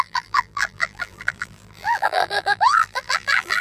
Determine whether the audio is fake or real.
fake